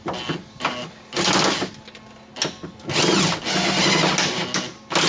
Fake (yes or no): no